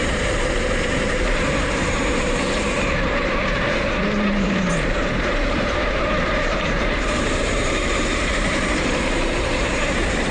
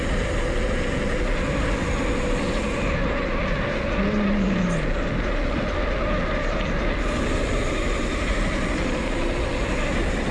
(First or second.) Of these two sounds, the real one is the second